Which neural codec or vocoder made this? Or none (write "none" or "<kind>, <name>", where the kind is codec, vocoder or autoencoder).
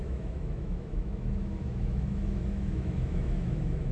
autoencoder, DAC-VAE